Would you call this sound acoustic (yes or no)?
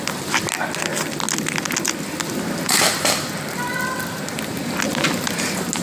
yes